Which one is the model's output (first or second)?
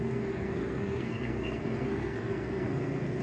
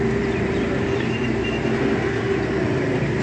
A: first